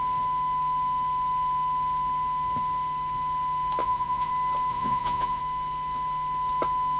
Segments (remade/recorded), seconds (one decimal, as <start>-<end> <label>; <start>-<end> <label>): 0.0-3.8 recorded; 3.8-4.3 remade; 4.3-4.7 recorded; 4.7-5.4 remade; 5.4-7.0 recorded